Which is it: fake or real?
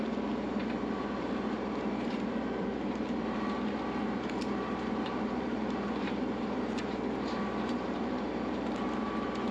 fake